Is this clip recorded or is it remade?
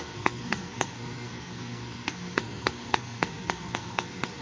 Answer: remade